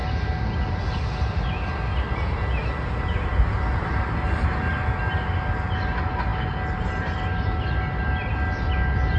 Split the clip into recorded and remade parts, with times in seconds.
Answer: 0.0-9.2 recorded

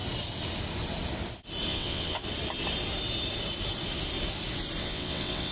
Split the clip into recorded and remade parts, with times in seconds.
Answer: 0.0-1.7 recorded; 1.7-2.2 remade; 2.2-4.8 recorded; 4.8-5.5 remade

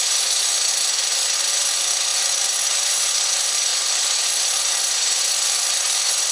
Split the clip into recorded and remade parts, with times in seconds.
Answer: 0.0-6.3 recorded

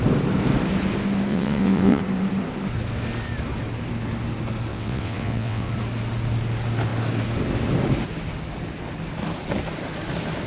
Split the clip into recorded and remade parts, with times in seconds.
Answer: 0.0-1.3 recorded; 1.3-2.0 remade; 2.0-4.7 recorded; 4.7-5.7 remade; 5.7-10.5 recorded

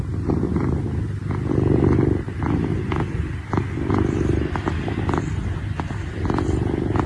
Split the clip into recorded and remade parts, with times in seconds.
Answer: 0.0-7.1 recorded

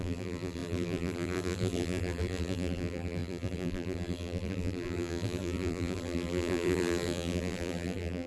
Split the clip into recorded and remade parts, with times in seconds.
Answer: 0.0-8.3 remade